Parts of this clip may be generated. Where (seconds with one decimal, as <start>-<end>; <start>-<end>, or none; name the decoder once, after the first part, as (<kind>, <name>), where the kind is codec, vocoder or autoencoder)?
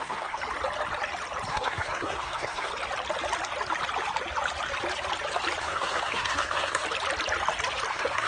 0.0-0.4 (codec, SNAC); 1.5-2.7; 5.6-6.8; 7.9-8.3